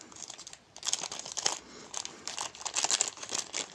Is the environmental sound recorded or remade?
recorded